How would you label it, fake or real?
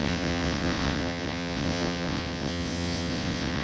fake